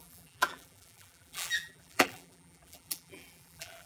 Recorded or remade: remade